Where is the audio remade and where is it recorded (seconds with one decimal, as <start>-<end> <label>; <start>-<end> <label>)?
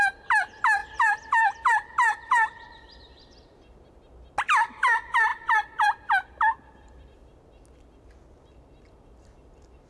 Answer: 0.0-0.8 recorded; 0.8-4.0 remade; 4.0-5.3 recorded; 5.3-7.1 remade; 7.1-9.9 recorded